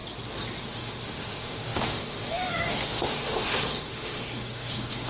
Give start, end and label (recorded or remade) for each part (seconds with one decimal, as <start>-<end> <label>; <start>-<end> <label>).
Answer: 0.0-0.6 recorded; 0.6-5.1 remade